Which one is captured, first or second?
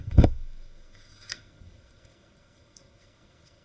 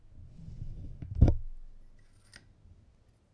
second